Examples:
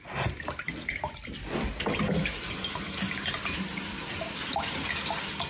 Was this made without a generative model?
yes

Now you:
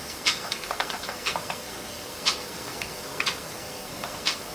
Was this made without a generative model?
no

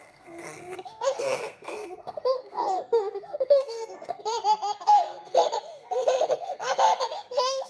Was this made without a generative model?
no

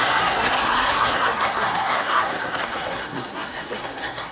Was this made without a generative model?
no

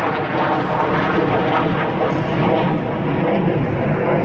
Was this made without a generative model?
yes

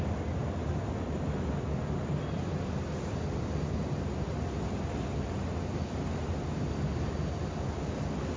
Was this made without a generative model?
yes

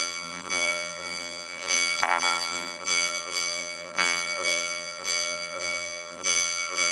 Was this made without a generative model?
no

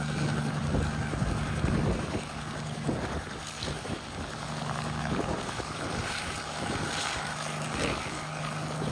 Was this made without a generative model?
no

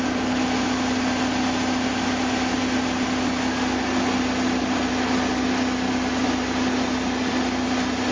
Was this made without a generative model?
yes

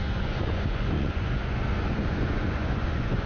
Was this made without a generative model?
no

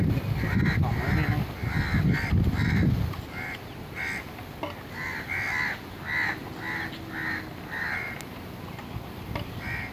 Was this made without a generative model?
yes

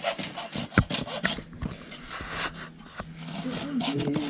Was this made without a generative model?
yes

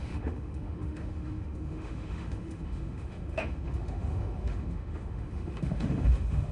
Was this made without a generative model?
no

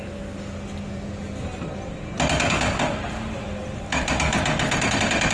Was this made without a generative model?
yes